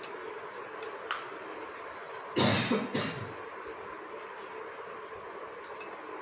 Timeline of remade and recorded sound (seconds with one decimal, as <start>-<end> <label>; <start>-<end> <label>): 0.0-6.2 recorded